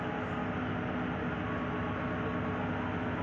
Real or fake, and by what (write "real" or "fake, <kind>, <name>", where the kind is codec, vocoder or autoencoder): real